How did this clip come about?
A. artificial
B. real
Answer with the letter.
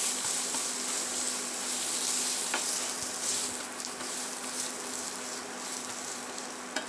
A